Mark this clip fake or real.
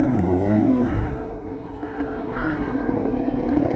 fake